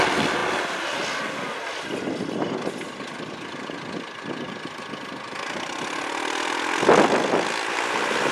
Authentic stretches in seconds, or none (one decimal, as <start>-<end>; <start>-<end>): 0.0-8.3